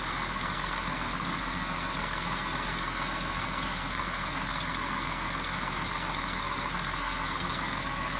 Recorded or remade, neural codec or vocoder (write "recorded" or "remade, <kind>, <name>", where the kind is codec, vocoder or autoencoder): remade, codec, SNAC